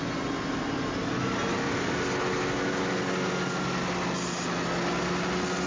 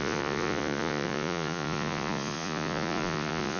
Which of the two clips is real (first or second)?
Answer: first